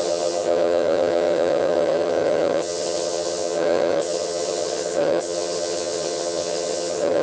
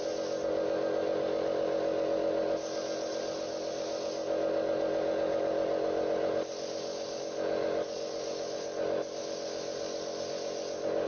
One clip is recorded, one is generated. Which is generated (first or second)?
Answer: first